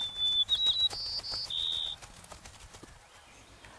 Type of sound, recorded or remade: recorded